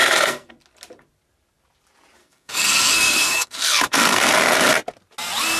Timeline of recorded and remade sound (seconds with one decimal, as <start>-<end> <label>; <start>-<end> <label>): 0.0-0.5 remade; 0.5-2.2 recorded; 2.2-4.3 remade; 4.3-5.6 recorded